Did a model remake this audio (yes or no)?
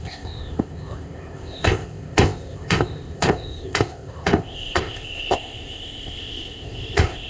yes